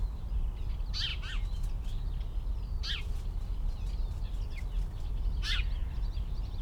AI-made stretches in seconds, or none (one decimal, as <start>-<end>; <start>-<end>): none